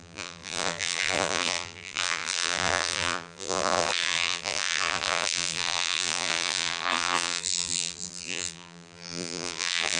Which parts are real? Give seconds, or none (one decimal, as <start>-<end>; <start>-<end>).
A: none